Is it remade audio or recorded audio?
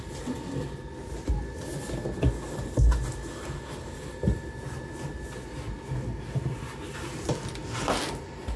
recorded